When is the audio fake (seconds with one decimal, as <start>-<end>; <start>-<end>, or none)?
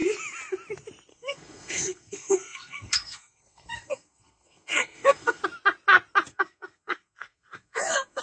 1.1-5.4; 6.3-8.2